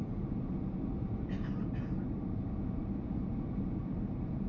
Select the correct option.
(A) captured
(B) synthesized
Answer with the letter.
B